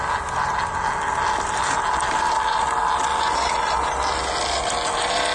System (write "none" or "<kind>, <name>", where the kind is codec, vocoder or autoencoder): none